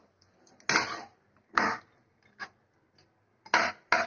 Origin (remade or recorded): recorded